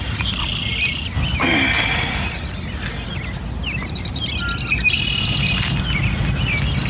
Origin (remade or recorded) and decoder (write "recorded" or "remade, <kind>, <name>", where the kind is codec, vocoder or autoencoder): recorded